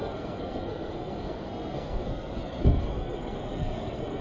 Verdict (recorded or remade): remade